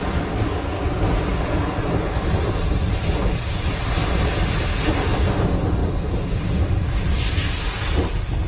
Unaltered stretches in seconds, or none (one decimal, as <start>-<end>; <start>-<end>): 0.0-5.8; 6.5-8.5